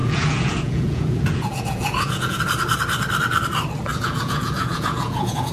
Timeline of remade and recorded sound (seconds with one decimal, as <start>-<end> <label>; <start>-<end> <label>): 0.0-2.4 remade; 2.4-3.9 recorded; 3.9-5.5 remade